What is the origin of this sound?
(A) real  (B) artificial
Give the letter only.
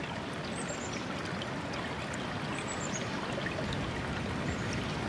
A